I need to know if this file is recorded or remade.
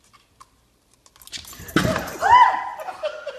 recorded